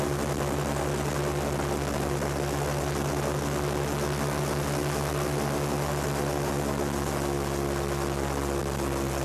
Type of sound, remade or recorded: recorded